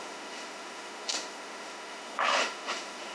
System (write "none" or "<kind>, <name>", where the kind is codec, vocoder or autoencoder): autoencoder, DAC-VAE